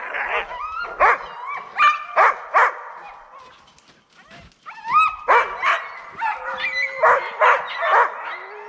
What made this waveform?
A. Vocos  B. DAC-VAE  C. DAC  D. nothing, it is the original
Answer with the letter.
D